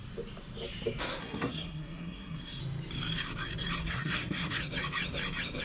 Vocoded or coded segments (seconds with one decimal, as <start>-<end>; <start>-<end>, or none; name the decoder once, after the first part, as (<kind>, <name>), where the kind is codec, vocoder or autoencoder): 1.2-2.6 (codec, SNAC); 3.8-4.6